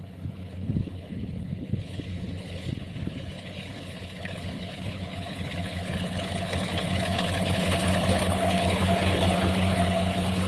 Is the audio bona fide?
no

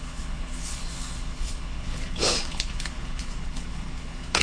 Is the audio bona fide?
no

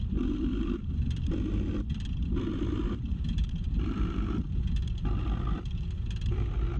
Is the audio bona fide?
yes